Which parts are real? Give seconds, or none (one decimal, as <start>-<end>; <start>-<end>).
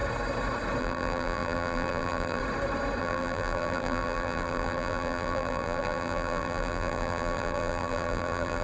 0.0-0.8; 2.4-3.0